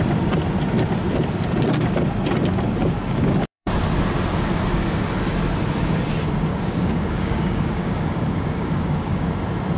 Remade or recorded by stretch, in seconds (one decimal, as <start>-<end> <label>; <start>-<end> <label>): 0.0-2.8 recorded; 2.8-3.8 remade; 3.8-6.5 recorded; 6.5-9.3 remade; 9.3-9.8 recorded

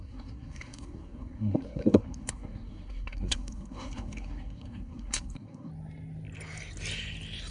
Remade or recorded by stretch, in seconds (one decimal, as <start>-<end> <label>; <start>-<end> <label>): 0.0-5.7 remade; 5.7-7.5 recorded